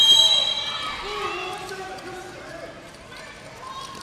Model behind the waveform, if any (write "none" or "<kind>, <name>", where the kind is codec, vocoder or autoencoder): none